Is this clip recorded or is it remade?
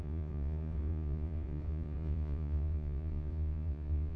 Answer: remade